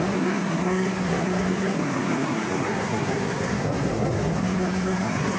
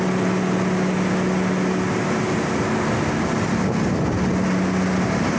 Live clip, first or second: second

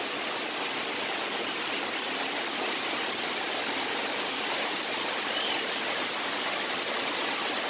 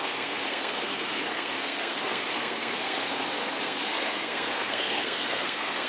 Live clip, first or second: first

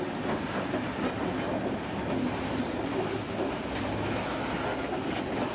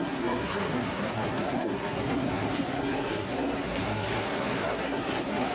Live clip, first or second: first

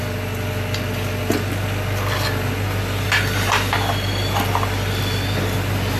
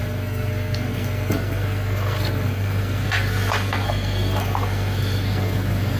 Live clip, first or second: first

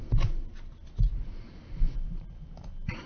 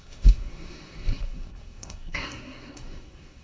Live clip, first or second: first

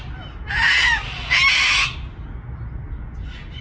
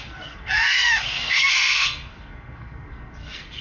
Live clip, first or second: first